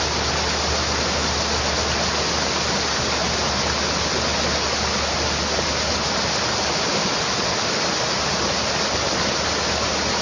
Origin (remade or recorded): recorded